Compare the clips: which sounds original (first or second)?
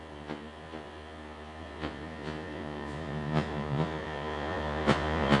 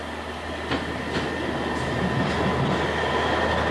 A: second